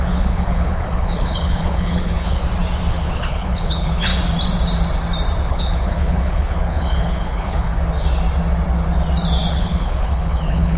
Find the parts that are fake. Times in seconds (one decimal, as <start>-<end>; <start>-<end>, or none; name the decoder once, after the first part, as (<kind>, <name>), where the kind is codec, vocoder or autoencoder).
0.0-2.4 (codec, HILCodec); 2.9-4.1; 5.5-7.7; 9.5-10.8